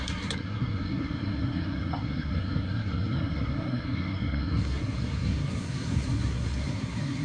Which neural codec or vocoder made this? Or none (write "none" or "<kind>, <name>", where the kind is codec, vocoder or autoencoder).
codec, SNAC